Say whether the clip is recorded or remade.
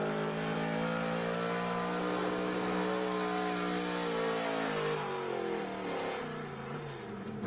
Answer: recorded